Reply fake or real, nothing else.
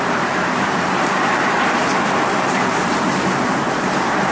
fake